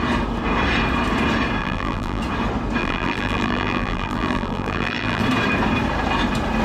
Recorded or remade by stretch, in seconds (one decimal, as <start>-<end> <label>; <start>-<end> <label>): 0.0-1.6 recorded; 1.6-2.2 remade; 2.2-2.8 recorded; 2.8-5.2 remade; 5.2-6.6 recorded